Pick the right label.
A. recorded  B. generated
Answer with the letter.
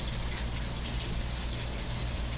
A